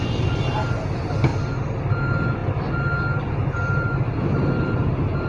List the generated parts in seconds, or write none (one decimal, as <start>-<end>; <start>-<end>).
none